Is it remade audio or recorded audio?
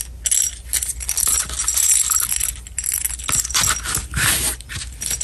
recorded